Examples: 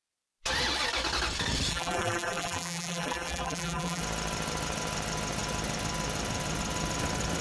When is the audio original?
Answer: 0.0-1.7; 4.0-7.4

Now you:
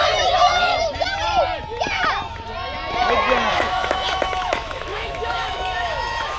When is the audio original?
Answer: 0.7-3.5

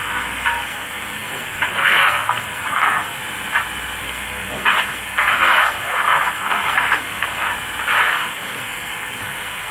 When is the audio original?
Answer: 3.2-4.0; 7.5-8.0

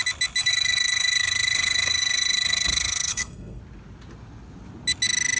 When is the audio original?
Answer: 0.0-0.4; 3.6-5.4

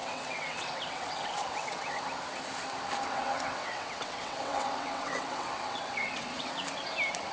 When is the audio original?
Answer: 2.0-3.1; 6.5-7.3

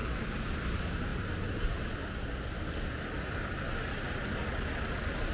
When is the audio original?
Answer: 0.0-5.3

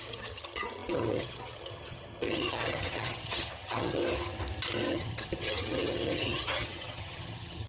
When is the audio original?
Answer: 4.0-4.9

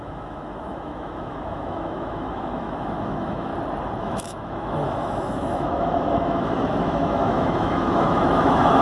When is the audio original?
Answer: 3.5-4.0